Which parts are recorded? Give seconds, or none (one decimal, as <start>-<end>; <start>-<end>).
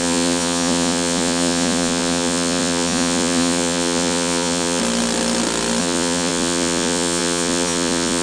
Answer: 4.8-5.8